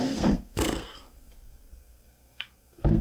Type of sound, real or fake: fake